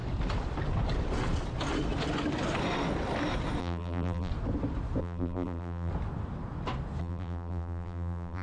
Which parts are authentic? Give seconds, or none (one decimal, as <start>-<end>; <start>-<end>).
0.0-3.6; 4.3-5.0; 5.9-7.0

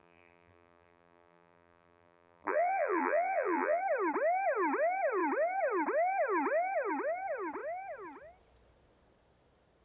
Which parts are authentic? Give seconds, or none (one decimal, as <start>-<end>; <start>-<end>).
3.8-9.8

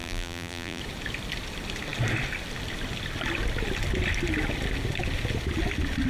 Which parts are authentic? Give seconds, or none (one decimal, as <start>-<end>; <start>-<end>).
0.8-6.1

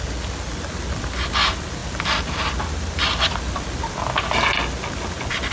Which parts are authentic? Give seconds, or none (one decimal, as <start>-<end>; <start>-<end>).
0.0-5.5

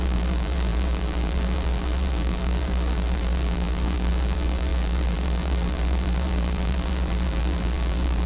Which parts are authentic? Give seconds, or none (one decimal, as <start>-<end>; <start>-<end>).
none